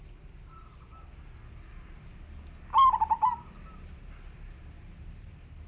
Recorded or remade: recorded